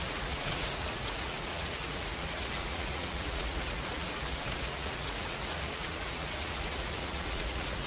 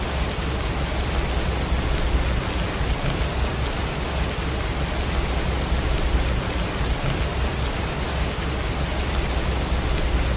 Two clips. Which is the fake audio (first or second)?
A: first